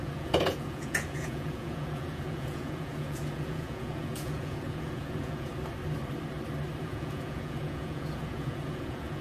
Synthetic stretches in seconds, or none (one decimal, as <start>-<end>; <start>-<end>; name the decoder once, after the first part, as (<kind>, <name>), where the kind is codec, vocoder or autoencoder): 0.0-5.5 (vocoder, Vocos); 6.8-9.2